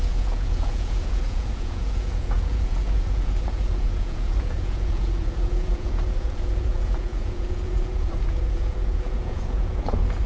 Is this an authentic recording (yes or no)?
no